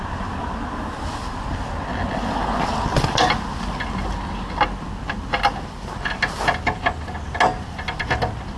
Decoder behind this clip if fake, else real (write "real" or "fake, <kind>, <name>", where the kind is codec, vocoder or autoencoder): real